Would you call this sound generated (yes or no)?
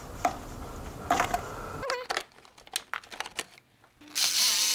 no